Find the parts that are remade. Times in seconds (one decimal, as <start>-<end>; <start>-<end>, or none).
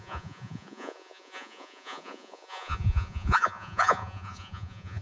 0.0-5.0